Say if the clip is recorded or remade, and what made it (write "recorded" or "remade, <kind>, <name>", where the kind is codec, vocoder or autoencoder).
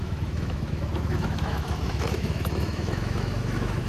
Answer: remade, autoencoder, DAC-VAE